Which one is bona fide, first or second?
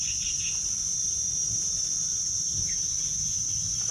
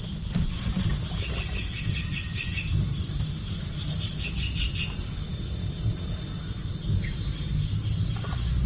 second